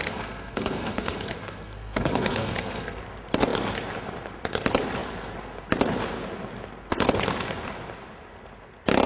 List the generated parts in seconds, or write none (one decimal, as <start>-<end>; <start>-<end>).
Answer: 0.0-3.0